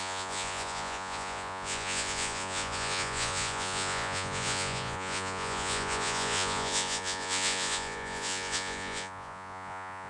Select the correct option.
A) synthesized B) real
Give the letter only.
A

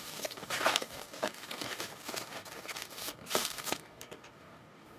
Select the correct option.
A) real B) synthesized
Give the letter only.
B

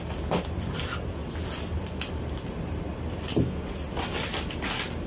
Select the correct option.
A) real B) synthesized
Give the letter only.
A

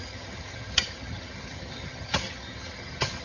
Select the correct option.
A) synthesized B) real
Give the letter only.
A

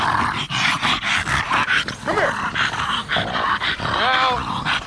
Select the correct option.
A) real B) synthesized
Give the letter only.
A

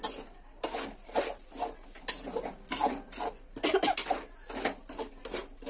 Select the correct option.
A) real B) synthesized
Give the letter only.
A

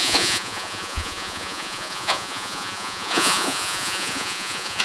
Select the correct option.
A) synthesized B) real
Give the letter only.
A